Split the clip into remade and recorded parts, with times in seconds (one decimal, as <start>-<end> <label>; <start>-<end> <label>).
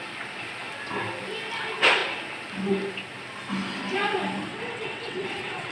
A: 0.0-4.5 recorded; 4.5-5.7 remade